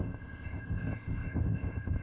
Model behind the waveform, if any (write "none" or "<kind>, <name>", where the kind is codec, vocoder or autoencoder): codec, ZipCodec